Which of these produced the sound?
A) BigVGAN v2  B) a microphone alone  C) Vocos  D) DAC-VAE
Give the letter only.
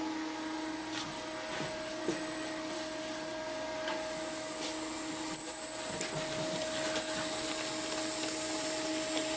B